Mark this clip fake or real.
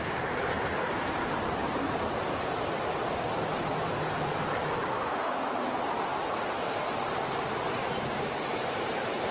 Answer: fake